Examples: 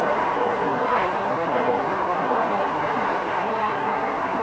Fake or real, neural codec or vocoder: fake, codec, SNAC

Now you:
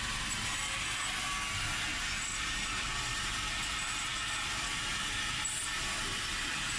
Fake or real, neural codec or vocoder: real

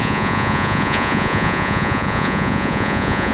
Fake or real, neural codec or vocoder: fake, vocoder, Vocos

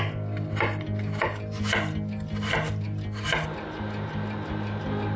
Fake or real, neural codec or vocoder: real